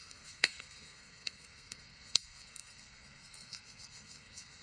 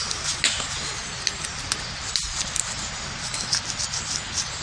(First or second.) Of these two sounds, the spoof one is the first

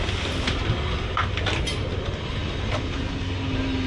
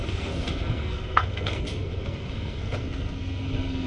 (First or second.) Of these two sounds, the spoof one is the second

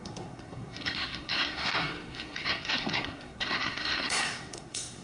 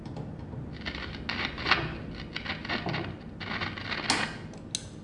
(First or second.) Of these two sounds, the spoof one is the first